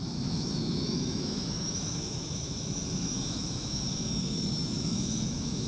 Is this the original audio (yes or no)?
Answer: no